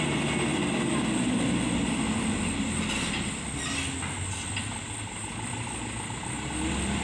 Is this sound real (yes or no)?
yes